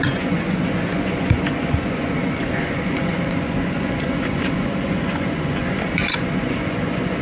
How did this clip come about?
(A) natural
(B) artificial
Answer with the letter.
B